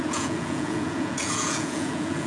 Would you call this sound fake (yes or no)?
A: yes